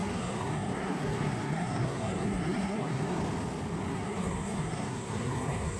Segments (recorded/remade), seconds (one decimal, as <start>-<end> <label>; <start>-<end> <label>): 0.0-3.2 remade; 3.2-3.9 recorded; 3.9-5.8 remade